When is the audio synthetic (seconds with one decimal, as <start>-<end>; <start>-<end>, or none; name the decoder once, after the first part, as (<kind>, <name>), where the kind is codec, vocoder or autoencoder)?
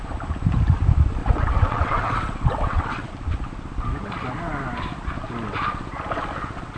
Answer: 1.2-3.1 (vocoder, WaveNeXt)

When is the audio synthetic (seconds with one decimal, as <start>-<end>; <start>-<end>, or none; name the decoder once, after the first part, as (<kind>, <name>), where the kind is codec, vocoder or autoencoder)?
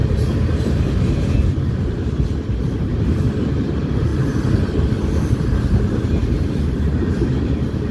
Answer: 0.5-4.1 (vocoder, BigVGAN v2); 5.1-7.9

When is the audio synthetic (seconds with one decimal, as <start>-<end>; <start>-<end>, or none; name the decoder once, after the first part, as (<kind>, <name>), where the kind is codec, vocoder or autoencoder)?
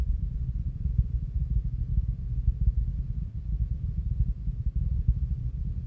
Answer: 0.0-0.9 (vocoder, BigVGAN v2)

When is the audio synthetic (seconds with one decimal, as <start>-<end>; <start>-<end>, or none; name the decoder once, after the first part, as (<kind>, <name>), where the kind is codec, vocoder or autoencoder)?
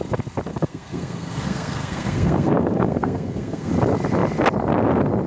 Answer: 0.5-3.7 (codec, SNAC)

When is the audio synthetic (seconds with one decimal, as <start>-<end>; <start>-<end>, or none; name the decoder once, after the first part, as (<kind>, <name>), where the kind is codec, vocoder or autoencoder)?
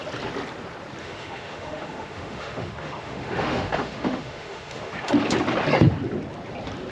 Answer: 1.0-5.1 (autoencoder, DAC-VAE)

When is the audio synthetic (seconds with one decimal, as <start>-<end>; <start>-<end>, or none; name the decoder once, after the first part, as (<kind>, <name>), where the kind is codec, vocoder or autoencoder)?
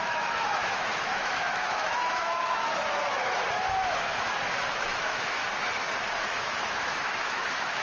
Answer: 0.0-5.4 (autoencoder, DAC-VAE); 6.2-7.8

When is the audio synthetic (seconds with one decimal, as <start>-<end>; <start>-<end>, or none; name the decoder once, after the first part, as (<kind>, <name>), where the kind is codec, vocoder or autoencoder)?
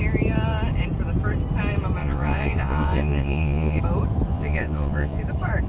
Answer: 2.0-3.8 (vocoder, Vocos); 4.3-5.2